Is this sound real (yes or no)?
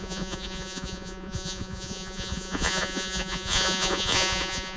no